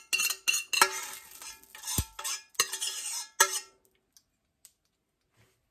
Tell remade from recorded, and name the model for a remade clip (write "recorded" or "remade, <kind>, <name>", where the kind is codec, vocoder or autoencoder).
recorded